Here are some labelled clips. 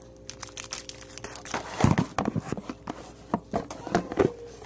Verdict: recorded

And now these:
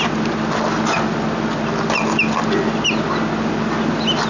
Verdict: recorded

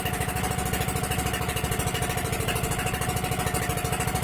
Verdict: recorded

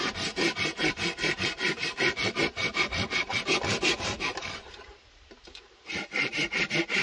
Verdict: remade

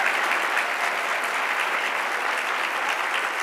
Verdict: recorded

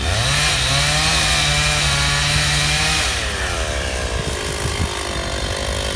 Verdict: recorded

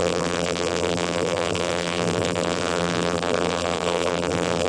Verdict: remade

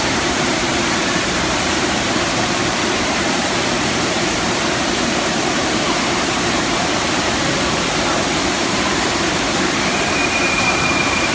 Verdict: remade